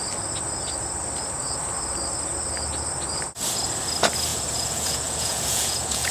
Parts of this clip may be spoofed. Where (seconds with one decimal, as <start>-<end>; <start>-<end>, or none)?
4.3-6.1